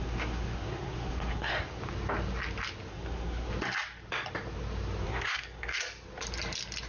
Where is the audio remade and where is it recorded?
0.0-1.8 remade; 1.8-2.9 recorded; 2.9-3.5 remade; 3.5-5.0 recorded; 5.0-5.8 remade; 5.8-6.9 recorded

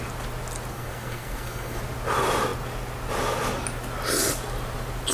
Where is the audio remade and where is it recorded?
0.0-0.7 recorded; 0.7-1.8 remade; 1.8-5.1 recorded